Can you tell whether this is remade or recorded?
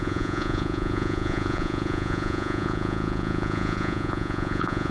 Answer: remade